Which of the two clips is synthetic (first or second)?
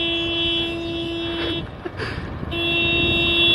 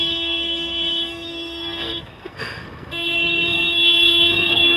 second